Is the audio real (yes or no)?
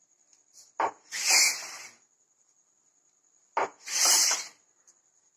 yes